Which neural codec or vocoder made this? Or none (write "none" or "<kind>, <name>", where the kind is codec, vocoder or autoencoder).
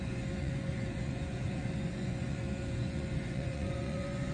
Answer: vocoder, Vocos